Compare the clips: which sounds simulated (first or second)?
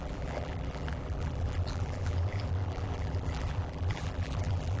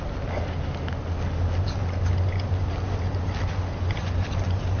first